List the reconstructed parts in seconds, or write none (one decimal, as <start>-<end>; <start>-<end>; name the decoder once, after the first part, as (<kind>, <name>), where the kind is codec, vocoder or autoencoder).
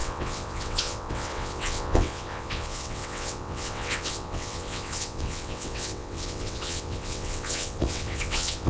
0.0-8.7 (vocoder, WaveNeXt)